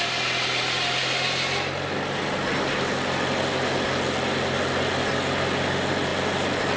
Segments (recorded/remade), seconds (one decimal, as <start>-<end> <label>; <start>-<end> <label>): 0.0-6.8 recorded